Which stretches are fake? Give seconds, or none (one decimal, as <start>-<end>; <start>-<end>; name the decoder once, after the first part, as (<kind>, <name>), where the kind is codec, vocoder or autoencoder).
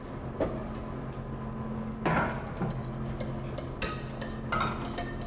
none